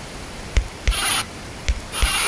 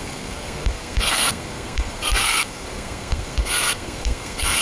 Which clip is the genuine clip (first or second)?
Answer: first